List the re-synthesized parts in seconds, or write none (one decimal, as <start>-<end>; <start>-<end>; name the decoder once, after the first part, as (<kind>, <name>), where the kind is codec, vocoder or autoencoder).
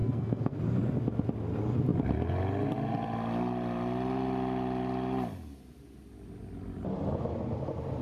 0.0-0.6 (codec, SNAC)